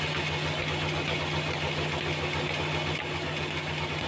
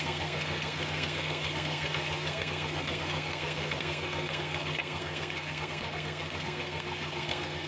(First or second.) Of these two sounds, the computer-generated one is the second